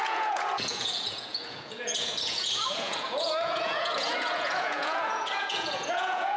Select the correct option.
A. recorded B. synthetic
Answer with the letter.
B